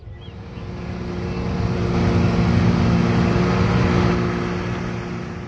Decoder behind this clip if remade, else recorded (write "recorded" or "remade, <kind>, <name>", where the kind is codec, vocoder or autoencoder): recorded